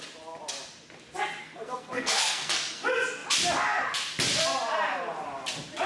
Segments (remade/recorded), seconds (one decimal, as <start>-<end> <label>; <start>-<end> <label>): 0.0-1.4 recorded; 1.4-2.8 remade; 2.8-5.9 recorded